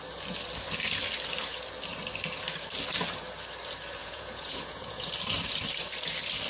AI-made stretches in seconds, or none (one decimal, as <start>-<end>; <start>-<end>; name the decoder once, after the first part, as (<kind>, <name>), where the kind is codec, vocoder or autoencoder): 4.0-5.1 (vocoder, Vocos)